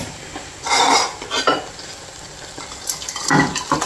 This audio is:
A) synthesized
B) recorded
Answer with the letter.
B